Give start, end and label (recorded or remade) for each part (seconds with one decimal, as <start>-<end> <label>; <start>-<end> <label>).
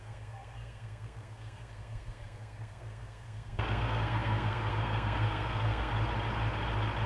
0.0-5.9 remade; 5.9-7.1 recorded